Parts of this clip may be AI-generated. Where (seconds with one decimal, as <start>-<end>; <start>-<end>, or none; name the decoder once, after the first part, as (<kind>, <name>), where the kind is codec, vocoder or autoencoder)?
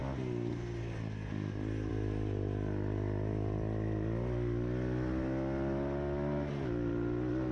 none